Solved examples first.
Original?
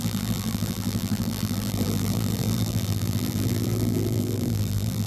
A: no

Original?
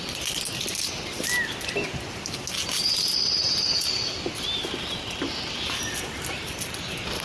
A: yes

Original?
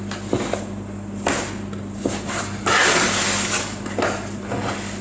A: yes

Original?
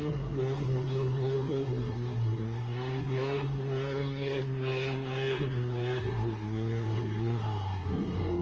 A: no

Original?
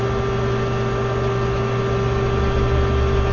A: yes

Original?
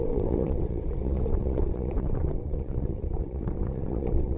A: no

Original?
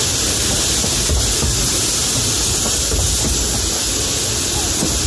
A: yes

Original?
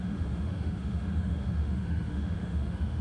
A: no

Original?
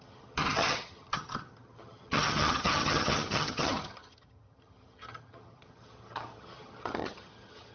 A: no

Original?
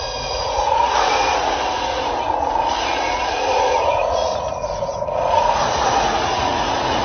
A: no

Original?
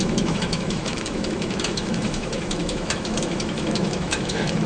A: no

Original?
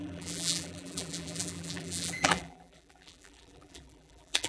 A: no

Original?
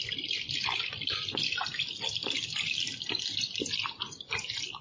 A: yes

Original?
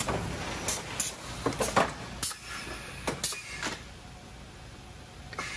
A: yes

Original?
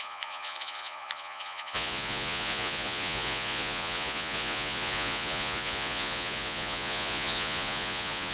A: no